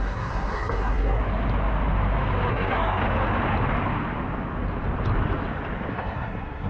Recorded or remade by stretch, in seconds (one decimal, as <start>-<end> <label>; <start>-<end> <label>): 0.0-1.2 remade; 1.2-2.5 recorded; 2.5-3.0 remade; 3.0-5.9 recorded; 5.9-6.7 remade